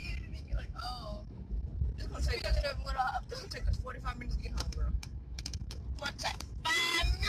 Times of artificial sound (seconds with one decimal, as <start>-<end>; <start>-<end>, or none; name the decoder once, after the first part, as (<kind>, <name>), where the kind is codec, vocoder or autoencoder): 0.0-1.7 (autoencoder, DAC-VAE); 4.4-5.8; 6.2-7.3